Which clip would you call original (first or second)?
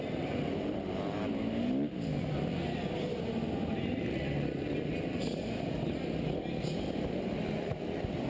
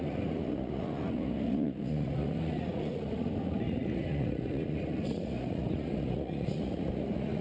first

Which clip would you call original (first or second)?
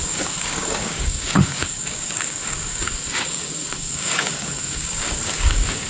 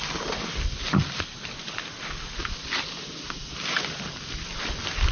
second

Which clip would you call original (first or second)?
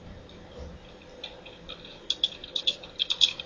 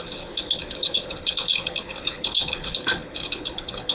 first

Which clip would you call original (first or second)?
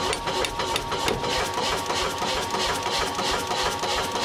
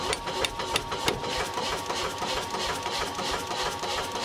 first